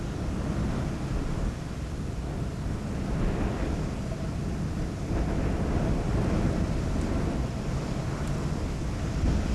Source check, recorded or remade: recorded